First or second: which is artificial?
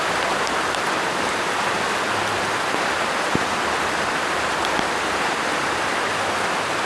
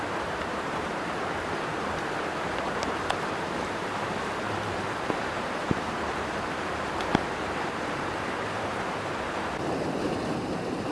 second